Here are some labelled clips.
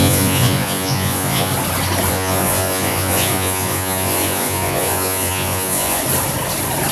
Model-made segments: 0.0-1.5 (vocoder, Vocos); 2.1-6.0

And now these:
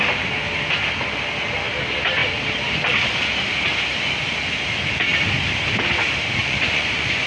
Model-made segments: 6.4-7.3 (vocoder, Vocos)

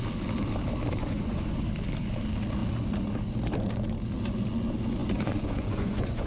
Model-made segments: 1.0-1.6 (vocoder, Vocos); 5.0-6.3

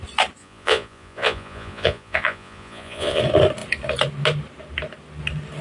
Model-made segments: 0.4-3.2 (vocoder, Vocos)